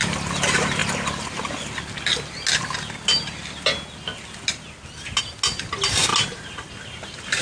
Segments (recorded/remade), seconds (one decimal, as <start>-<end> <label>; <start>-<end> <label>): 0.0-7.4 recorded